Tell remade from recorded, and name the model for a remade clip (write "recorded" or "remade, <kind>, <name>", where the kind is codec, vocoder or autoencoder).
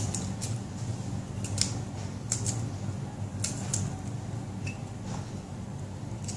recorded